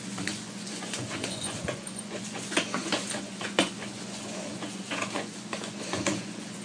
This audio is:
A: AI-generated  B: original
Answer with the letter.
A